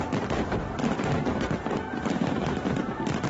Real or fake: real